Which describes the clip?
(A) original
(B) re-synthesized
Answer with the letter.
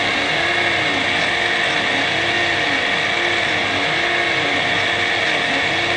A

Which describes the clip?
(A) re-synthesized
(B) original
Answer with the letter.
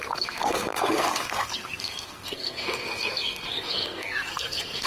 A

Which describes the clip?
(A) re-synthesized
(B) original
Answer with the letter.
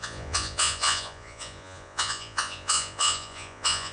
A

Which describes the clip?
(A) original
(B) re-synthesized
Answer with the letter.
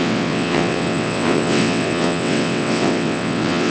B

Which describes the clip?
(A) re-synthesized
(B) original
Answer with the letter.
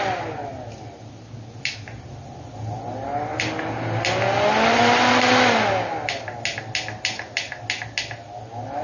B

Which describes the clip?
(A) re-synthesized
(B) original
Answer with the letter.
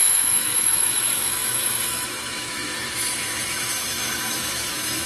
A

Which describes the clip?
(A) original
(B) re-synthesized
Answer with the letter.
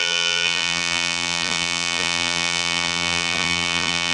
B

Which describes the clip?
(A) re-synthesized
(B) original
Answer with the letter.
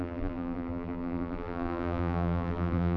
A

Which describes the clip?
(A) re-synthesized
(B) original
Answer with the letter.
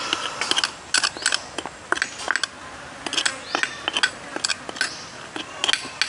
B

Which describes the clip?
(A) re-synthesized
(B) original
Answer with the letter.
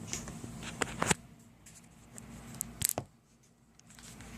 B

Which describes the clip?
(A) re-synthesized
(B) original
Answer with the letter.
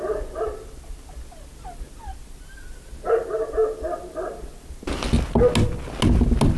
B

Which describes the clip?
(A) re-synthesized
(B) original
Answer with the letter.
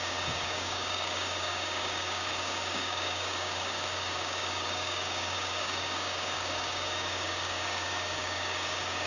A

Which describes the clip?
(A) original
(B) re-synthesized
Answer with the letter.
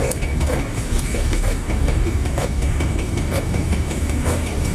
B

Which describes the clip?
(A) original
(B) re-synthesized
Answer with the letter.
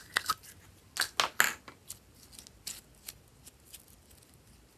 A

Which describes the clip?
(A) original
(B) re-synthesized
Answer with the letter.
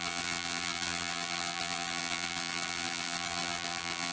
B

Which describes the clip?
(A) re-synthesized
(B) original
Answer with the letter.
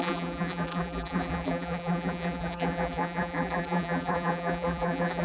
A